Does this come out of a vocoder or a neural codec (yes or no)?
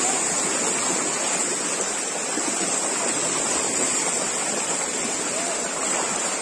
no